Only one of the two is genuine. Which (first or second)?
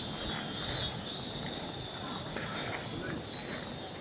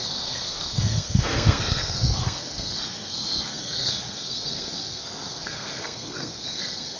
first